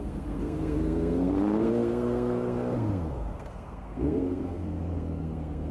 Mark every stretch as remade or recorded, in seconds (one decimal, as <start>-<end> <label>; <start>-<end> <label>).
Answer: 0.0-5.7 remade